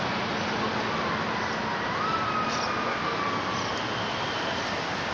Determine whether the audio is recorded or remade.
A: recorded